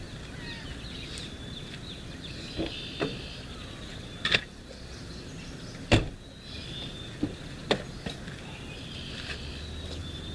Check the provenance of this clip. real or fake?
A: real